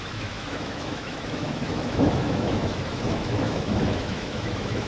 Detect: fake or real fake